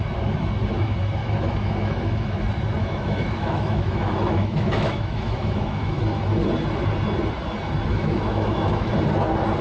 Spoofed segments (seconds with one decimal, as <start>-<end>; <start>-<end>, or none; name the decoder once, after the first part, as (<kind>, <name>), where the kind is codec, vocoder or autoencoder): 1.2-2.4 (autoencoder, DAC-VAE); 2.8-6.0; 7.9-8.9